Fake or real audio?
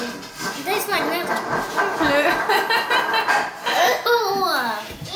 real